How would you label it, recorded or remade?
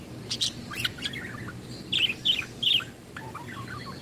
recorded